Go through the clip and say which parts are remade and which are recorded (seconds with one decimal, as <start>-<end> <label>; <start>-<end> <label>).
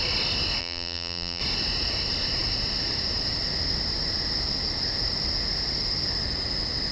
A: 0.0-0.6 recorded; 0.6-1.4 remade; 1.4-6.9 recorded